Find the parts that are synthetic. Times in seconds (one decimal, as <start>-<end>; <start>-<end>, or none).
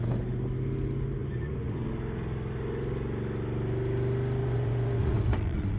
1.2-1.9; 4.4-5.8